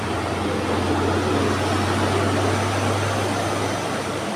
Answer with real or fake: real